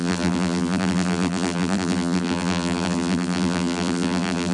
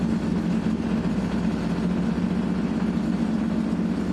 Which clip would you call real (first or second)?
second